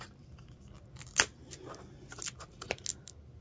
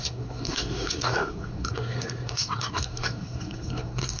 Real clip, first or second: first